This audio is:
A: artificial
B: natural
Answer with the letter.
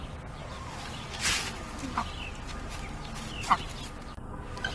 B